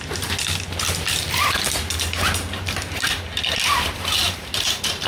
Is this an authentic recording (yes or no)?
yes